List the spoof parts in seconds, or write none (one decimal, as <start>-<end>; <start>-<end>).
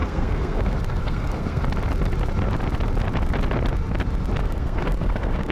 0.0-1.6; 4.4-5.5